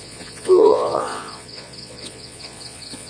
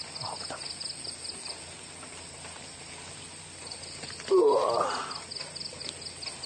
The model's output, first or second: first